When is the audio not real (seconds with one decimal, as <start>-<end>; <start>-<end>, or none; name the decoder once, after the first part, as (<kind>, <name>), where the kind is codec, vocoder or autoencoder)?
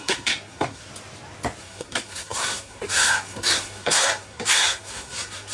0.0-0.9 (codec, SNAC); 1.6-5.5